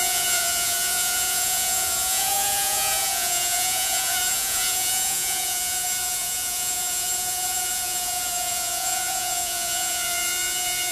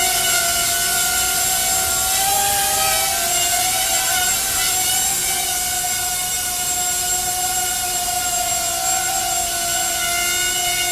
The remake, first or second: first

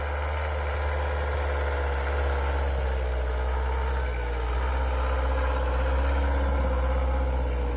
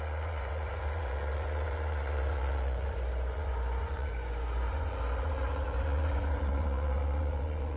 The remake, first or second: second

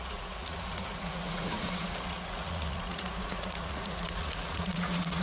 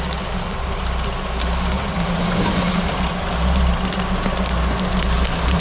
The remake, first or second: first